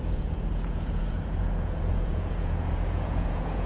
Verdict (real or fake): fake